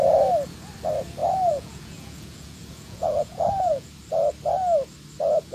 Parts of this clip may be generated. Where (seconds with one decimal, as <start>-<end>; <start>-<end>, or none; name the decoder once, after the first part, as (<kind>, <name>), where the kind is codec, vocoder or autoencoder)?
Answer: 1.2-3.9 (vocoder, Vocos)